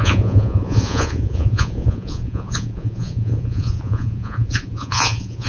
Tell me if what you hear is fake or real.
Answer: fake